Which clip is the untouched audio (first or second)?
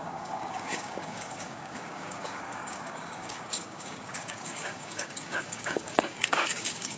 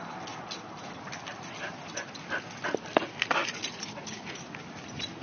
second